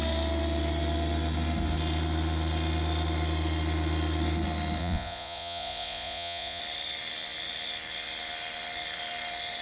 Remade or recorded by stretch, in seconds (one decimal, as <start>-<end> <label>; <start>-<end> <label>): 0.0-4.8 recorded; 4.8-6.6 remade; 6.6-9.6 recorded